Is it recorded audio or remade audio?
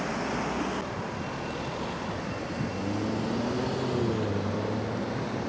recorded